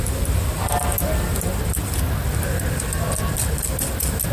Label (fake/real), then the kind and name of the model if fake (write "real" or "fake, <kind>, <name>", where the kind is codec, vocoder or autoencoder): real